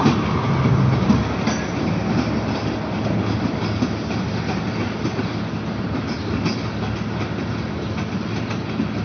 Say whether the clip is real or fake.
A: real